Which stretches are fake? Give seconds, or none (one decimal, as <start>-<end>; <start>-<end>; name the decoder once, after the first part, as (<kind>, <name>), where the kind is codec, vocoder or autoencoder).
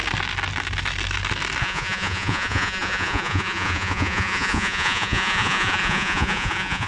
1.6-6.9 (vocoder, Vocos)